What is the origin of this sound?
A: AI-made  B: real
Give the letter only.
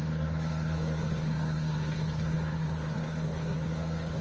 A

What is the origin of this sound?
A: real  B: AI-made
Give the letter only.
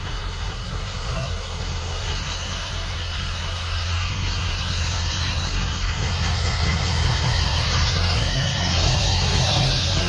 B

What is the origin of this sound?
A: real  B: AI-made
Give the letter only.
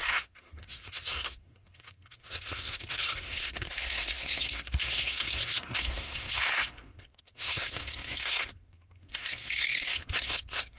B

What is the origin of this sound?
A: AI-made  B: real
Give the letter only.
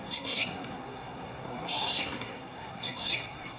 A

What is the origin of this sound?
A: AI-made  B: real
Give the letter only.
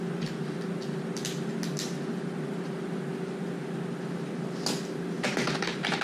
B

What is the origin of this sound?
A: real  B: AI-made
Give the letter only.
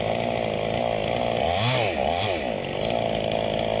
A